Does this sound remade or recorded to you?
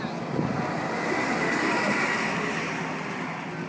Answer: recorded